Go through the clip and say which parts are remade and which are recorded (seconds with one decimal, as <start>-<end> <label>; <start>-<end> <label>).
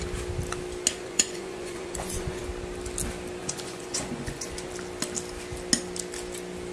0.0-0.9 recorded; 0.9-2.4 remade; 2.4-3.4 recorded; 3.4-4.7 remade; 4.7-6.7 recorded